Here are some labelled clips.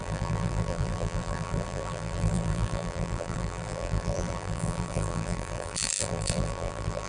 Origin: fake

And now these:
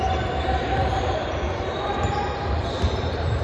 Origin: fake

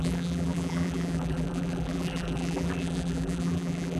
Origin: fake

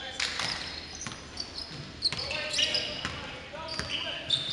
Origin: real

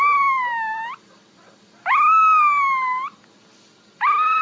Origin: real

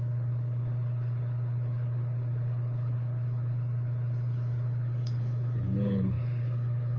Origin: fake